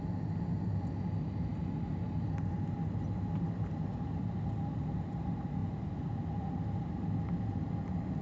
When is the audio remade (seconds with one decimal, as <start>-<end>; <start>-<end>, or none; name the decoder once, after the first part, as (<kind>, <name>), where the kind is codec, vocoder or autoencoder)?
none